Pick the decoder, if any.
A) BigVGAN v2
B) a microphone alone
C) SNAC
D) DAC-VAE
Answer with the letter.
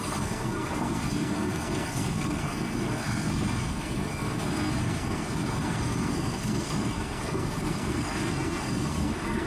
C